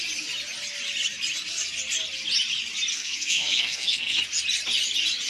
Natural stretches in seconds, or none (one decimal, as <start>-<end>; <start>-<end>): 0.0-2.9; 4.2-5.3

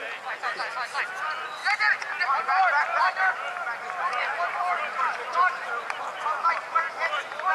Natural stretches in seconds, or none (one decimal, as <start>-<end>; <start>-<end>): 0.0-7.5

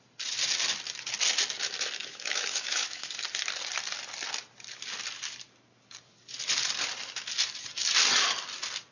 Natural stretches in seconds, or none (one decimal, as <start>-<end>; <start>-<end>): 0.0-2.0; 3.1-8.9